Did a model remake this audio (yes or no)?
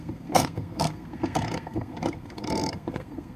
yes